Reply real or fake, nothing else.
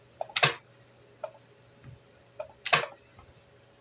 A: real